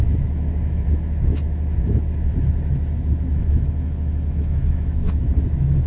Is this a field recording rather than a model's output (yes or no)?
no